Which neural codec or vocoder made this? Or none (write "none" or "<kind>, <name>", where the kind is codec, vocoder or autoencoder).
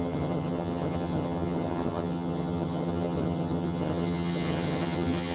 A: vocoder, HiFi-GAN